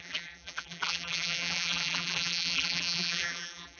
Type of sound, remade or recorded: remade